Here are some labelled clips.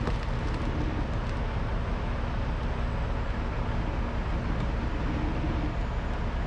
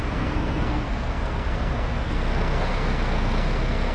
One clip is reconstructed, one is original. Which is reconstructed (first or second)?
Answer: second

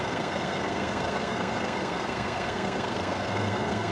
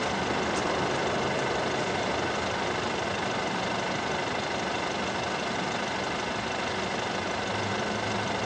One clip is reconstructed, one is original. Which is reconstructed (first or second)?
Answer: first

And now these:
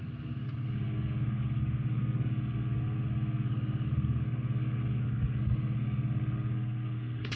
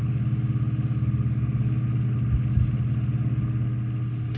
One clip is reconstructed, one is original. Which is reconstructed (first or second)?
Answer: first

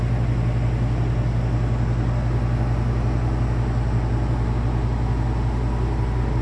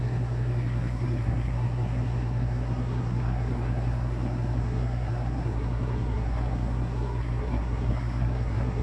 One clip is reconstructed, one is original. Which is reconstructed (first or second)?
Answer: second